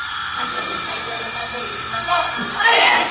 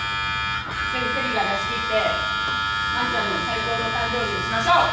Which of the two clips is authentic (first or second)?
second